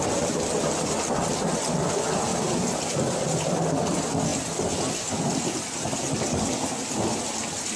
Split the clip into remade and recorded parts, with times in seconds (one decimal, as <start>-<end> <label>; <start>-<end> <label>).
0.0-7.8 recorded